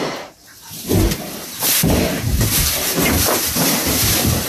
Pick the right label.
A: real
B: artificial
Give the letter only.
B